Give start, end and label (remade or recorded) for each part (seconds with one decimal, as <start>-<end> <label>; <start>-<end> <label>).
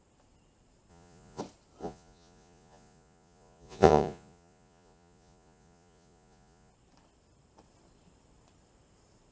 0.0-0.9 recorded; 0.9-1.4 remade; 1.4-1.8 recorded; 1.8-6.7 remade; 6.7-9.3 recorded